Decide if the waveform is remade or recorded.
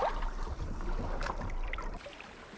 remade